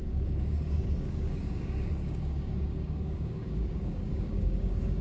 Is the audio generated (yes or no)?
yes